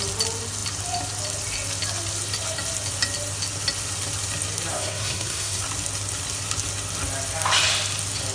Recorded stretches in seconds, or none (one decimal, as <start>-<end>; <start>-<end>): 0.0-4.7; 5.6-8.3